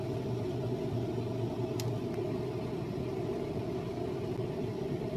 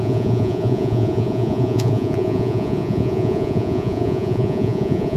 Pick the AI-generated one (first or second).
second